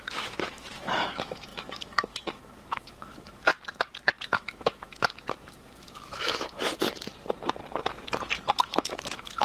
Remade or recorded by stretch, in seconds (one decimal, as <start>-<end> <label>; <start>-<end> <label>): 0.0-3.5 remade; 3.5-4.2 recorded; 4.2-6.7 remade; 6.7-8.6 recorded; 8.6-9.4 remade